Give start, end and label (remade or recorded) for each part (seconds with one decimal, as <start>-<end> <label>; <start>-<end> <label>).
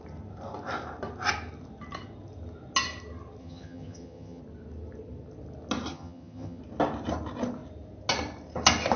0.0-3.4 recorded; 3.4-4.4 remade; 4.4-5.9 recorded; 5.9-6.6 remade; 6.6-9.0 recorded